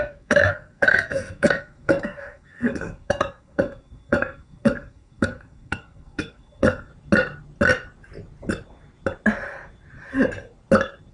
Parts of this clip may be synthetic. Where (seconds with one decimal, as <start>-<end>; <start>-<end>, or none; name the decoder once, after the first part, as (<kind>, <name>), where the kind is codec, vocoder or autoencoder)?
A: 0.0-6.9 (codec, SNAC)